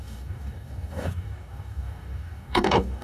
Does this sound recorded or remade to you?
remade